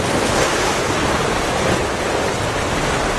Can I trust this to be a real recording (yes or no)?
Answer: yes